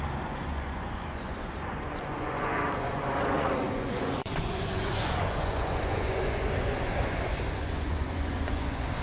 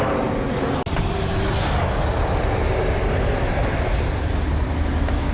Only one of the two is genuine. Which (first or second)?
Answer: second